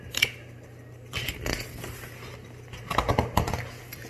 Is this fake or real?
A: real